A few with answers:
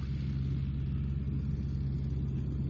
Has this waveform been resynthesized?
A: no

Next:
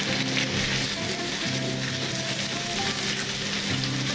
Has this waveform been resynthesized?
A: no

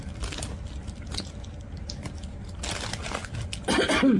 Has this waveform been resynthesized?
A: no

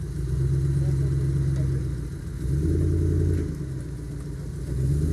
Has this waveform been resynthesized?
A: no